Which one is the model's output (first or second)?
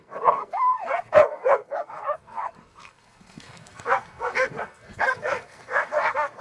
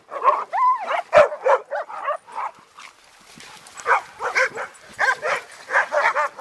first